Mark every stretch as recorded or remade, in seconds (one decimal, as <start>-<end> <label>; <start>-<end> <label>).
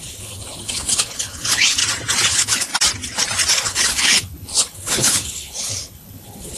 0.0-1.8 remade; 1.8-2.3 recorded; 2.3-2.7 remade; 2.7-3.5 recorded; 3.5-6.6 remade